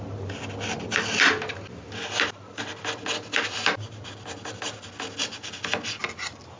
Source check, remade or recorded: recorded